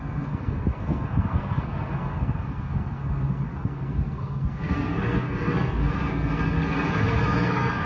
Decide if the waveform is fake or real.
fake